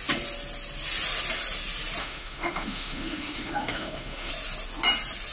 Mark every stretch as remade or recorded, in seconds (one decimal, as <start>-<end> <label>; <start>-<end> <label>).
0.0-2.0 recorded; 2.0-4.3 remade; 4.3-5.3 recorded